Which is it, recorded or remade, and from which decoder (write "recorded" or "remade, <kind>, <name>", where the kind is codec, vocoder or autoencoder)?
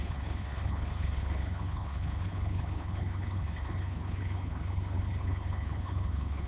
remade, codec, HILCodec